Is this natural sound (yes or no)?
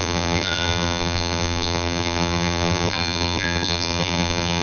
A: no